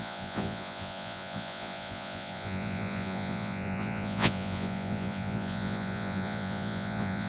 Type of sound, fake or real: fake